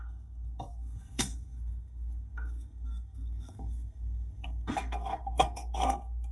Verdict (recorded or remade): remade